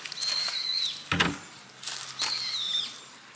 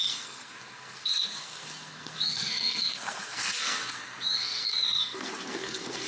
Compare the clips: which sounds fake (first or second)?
second